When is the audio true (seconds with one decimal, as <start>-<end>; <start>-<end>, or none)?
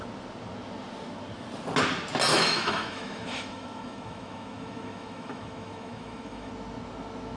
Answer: 0.0-2.3; 6.5-7.4